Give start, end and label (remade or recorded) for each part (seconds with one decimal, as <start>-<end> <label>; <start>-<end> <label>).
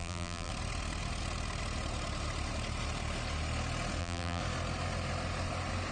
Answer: 0.0-0.5 remade; 0.5-4.0 recorded; 4.0-4.4 remade; 4.4-5.9 recorded